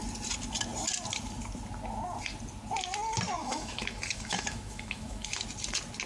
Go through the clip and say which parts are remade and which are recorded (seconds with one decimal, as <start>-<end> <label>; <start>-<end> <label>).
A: 0.0-3.4 recorded; 3.4-5.3 remade; 5.3-6.1 recorded